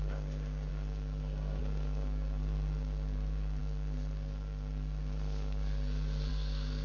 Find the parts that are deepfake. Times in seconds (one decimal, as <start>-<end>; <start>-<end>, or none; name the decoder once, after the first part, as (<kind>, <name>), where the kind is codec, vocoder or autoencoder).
0.0-6.8 (codec, SNAC)